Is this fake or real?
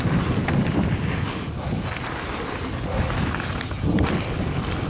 real